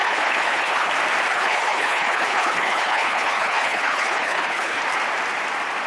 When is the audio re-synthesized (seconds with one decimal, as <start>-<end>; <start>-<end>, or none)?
0.0-0.9; 1.3-4.8